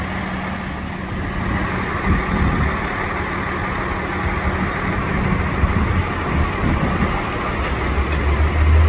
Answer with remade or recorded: recorded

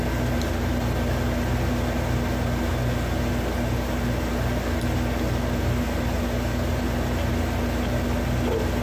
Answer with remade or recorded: recorded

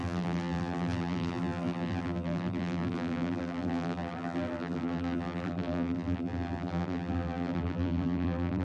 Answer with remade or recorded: remade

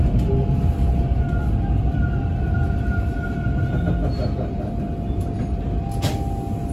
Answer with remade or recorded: recorded